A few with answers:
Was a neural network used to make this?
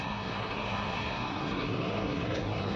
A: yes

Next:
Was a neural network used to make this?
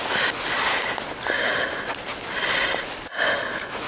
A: no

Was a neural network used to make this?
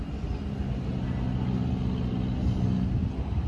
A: no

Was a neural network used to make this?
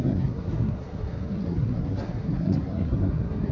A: yes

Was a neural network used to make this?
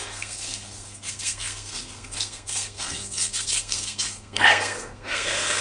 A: yes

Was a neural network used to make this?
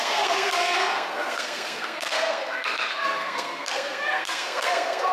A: yes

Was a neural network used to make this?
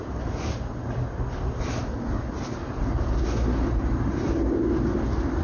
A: no